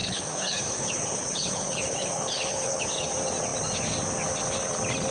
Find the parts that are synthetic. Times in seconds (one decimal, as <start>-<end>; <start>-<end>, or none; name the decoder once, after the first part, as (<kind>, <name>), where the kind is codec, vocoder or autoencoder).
0.0-3.1 (codec, HILCodec)